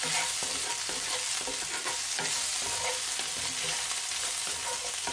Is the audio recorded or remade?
recorded